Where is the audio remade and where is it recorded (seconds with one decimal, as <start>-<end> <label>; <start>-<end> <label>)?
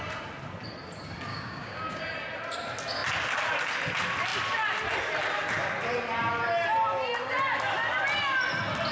0.0-1.3 recorded; 1.3-2.0 remade; 2.0-8.9 recorded